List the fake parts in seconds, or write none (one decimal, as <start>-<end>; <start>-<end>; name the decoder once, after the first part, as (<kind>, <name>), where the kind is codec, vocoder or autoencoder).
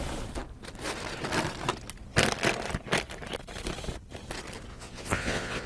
4.7-5.7 (vocoder, Vocos)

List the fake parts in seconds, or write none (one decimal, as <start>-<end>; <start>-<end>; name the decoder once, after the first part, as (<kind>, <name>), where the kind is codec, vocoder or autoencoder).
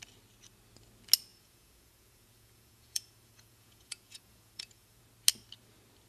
1.3-5.0 (vocoder, Vocos)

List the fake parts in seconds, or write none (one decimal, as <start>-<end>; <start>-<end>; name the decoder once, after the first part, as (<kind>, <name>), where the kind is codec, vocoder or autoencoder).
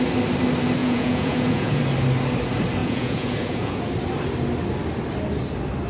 0.8-1.8 (vocoder, Vocos); 2.8-3.8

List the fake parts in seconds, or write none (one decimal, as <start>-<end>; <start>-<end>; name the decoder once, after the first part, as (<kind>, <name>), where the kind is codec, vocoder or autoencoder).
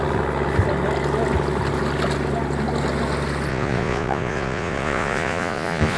3.5-6.0 (vocoder, Vocos)